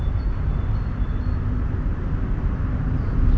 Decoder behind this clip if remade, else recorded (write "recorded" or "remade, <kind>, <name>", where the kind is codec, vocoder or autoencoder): recorded